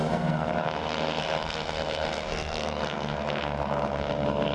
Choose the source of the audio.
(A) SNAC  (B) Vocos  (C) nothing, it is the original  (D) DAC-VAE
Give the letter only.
A